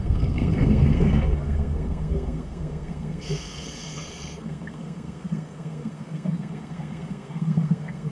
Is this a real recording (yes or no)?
no